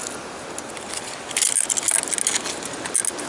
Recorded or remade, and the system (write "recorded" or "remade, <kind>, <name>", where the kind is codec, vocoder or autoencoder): recorded